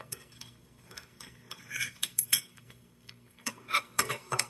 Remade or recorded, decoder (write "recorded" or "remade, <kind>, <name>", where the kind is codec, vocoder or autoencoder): remade, codec, SNAC